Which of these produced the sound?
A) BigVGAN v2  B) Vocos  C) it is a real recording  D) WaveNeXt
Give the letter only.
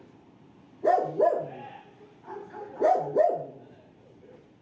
C